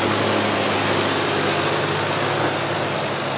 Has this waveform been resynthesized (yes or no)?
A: no